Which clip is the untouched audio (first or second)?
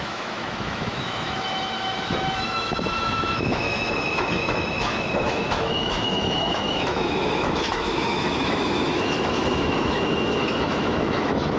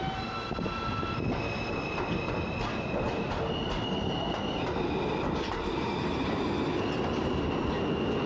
second